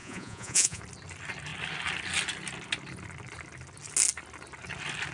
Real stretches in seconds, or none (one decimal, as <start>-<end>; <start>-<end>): 0.8-5.1